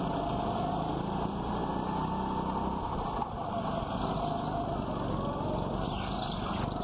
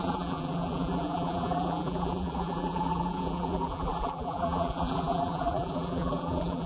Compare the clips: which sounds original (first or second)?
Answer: first